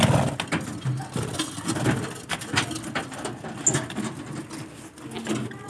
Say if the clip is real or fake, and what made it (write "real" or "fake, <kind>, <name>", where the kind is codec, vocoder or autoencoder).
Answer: real